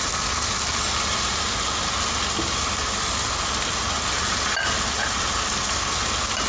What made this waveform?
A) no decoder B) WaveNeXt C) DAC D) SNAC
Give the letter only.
A